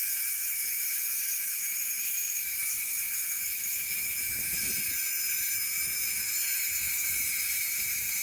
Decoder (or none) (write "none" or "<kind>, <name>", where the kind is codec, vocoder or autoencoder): autoencoder, DAC-VAE